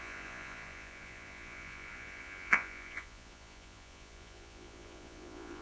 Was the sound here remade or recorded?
remade